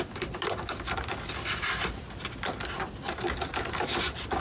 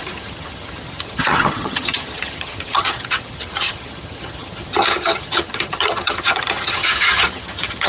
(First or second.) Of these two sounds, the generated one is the second